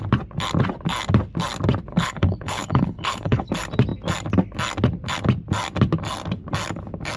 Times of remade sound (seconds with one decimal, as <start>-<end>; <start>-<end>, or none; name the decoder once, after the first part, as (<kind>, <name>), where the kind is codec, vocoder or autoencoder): 1.9-3.5 (codec, HILCodec)